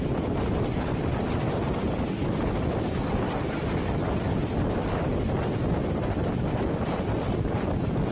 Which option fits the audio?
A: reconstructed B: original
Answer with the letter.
B